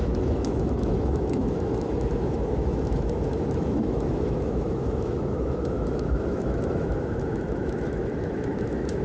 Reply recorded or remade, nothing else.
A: remade